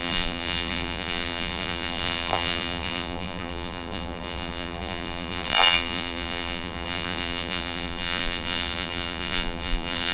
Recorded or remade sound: remade